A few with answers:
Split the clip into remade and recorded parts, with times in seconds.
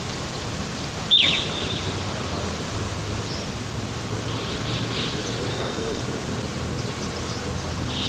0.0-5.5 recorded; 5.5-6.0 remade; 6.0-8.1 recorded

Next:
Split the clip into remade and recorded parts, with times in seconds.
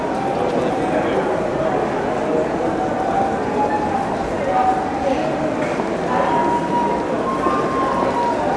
0.0-8.6 recorded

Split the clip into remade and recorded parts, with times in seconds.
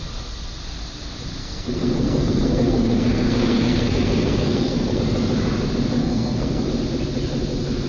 0.0-1.4 recorded; 1.4-5.0 remade; 5.0-6.0 recorded; 6.0-6.7 remade; 6.7-7.9 recorded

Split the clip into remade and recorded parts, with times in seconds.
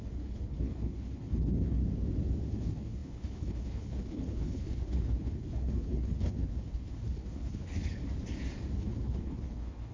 0.0-1.8 remade; 1.8-2.5 recorded; 2.5-8.0 remade; 8.0-8.8 recorded; 8.8-9.9 remade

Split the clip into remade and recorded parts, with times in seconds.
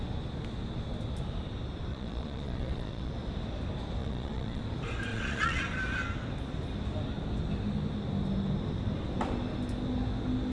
0.0-1.9 recorded; 1.9-3.1 remade; 3.1-4.0 recorded; 4.0-4.6 remade; 4.6-5.1 recorded; 5.1-5.6 remade; 5.6-10.5 recorded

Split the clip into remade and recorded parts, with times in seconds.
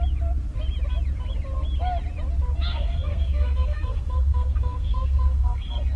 0.0-2.7 recorded; 2.7-6.0 remade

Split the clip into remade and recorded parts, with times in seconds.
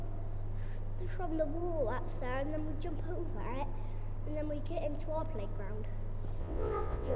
0.0-6.4 recorded; 6.4-7.2 remade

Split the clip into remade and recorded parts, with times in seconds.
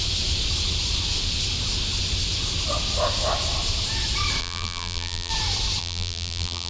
0.0-4.4 recorded; 4.4-5.3 remade; 5.3-5.8 recorded; 5.8-6.7 remade